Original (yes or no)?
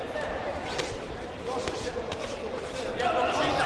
yes